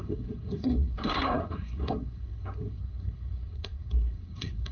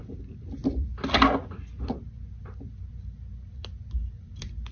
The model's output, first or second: first